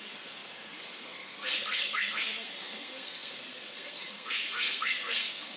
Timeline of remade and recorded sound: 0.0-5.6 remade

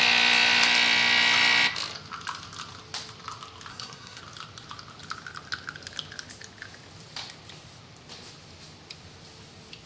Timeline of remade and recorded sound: 0.0-3.7 recorded; 3.7-4.2 remade; 4.2-9.9 recorded

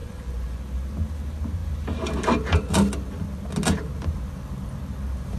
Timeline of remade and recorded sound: 0.0-0.6 remade; 0.6-5.4 recorded

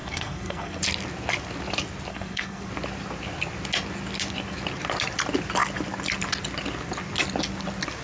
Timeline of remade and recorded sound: 0.0-0.8 remade; 0.8-2.1 recorded; 2.1-2.7 remade; 2.7-8.0 recorded

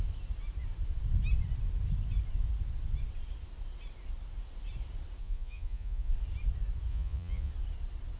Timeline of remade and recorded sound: 0.0-5.2 recorded; 5.2-6.1 remade; 6.1-6.9 recorded; 6.9-7.5 remade; 7.5-8.2 recorded